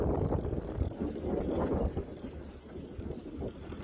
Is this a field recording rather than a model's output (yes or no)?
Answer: yes